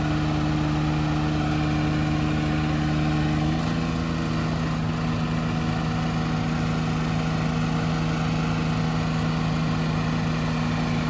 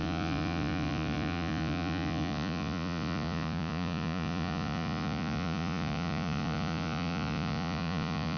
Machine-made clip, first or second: second